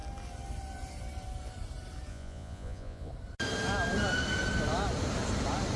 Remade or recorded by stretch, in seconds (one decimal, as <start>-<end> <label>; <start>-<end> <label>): 0.0-2.1 recorded; 2.1-3.1 remade; 3.1-5.8 recorded